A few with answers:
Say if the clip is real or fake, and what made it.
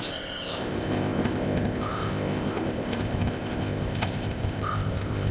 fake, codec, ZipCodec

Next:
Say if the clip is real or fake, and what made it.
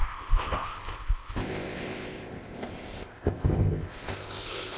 fake, codec, ZipCodec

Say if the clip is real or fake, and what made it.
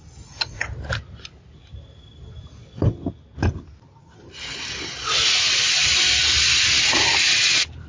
real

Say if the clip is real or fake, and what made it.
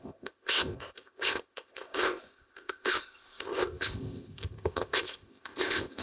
fake, codec, ZipCodec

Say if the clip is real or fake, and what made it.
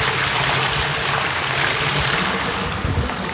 real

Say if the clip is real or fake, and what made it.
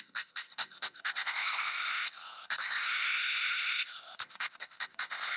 fake, codec, ZipCodec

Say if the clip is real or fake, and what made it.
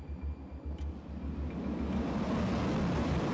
real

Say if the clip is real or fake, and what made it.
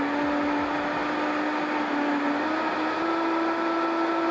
real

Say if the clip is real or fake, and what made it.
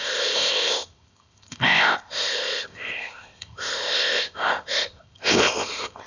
fake, codec, ZipCodec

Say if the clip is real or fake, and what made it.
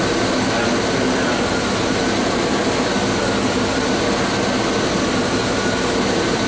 real